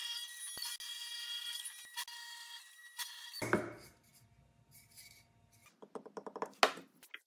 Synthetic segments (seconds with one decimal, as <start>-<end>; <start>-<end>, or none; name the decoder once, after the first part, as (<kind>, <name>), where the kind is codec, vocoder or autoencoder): none